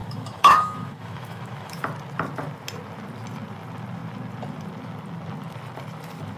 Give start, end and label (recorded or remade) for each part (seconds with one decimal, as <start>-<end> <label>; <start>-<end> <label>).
0.0-1.8 remade; 1.8-6.4 recorded